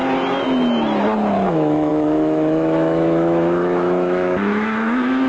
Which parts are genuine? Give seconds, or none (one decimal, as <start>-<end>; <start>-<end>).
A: 0.0-1.5